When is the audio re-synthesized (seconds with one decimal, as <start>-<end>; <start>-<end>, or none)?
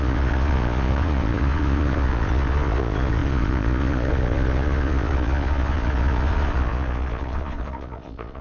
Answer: 0.0-8.4